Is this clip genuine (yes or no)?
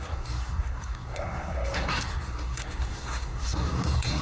no